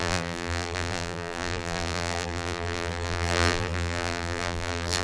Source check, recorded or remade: remade